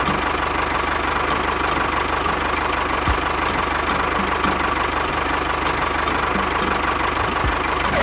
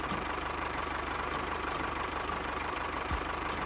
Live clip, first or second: first